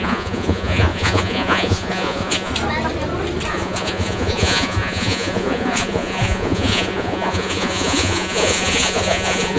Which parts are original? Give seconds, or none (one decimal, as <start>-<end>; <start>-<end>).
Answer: 2.5-3.5